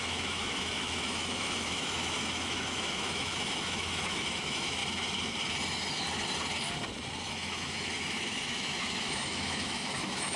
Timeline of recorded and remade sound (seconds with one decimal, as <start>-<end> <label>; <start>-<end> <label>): 0.0-4.8 remade; 4.8-7.3 recorded; 7.3-10.4 remade